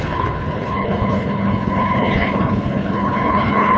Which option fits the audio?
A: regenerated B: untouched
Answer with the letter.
A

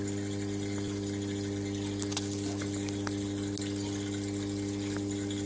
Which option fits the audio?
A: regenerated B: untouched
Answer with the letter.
B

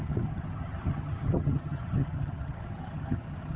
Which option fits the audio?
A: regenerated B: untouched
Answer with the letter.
A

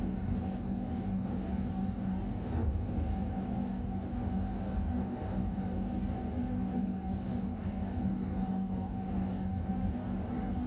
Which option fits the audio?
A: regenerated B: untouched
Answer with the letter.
A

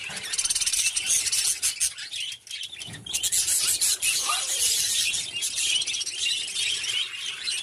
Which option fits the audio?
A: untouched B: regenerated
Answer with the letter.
A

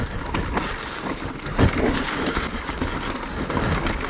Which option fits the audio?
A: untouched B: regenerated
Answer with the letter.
A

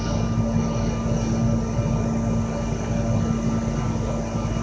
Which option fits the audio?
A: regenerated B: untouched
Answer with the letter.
B